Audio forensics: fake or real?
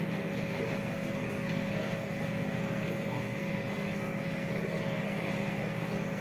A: fake